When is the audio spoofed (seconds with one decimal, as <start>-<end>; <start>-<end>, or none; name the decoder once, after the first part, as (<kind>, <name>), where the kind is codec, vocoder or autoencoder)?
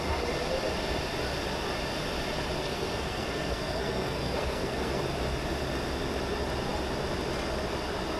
2.6-5.0 (codec, SNAC)